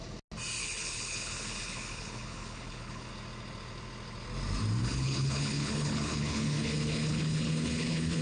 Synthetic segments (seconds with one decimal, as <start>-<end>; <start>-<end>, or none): 0.6-3.1; 4.8-8.2